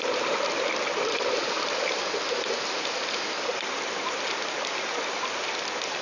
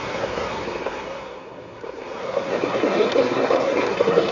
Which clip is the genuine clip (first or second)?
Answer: first